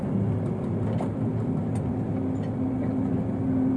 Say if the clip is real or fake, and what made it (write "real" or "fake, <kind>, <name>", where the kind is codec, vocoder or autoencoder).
real